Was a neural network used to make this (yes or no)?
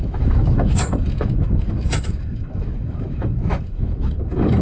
yes